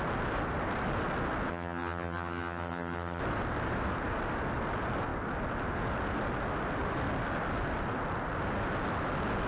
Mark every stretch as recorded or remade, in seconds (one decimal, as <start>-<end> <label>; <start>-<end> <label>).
0.0-1.5 recorded; 1.5-3.2 remade; 3.2-9.5 recorded